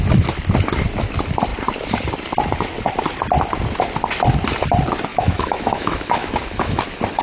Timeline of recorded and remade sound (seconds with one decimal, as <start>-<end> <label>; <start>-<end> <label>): 0.0-5.1 recorded; 5.1-6.8 remade; 6.8-7.2 recorded